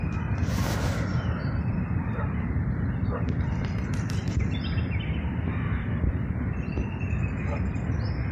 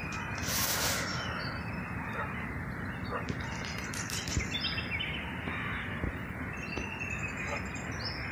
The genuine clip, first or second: second